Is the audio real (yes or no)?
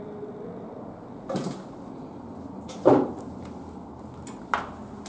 yes